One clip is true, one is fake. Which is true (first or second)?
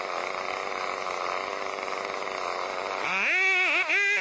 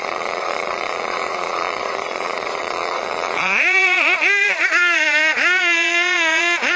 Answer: first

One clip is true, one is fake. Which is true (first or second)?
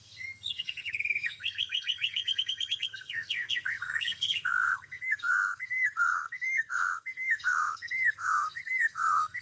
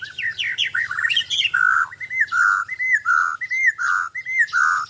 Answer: second